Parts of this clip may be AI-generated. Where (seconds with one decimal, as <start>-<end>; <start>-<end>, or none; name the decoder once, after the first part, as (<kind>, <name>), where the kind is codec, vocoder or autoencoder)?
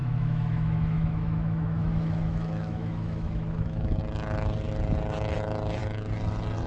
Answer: 0.0-4.0 (autoencoder, DAC-VAE)